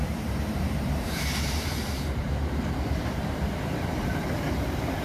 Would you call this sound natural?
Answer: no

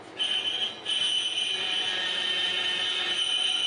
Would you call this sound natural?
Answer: yes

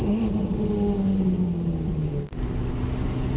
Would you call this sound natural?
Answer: yes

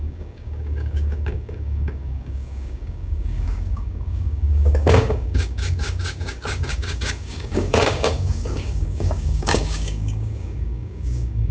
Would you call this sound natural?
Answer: no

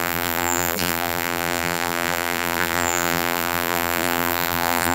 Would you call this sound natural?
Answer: no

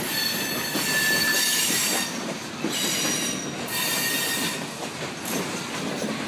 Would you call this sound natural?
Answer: yes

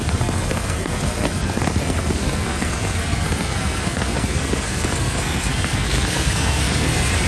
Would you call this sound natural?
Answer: no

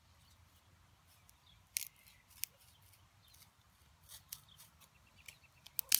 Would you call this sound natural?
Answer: yes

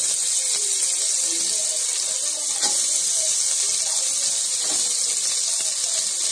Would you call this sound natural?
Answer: yes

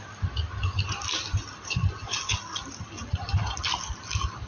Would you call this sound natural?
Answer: yes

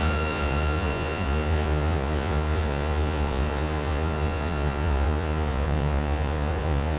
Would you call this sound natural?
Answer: no